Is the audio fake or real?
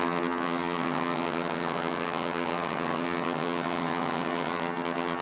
fake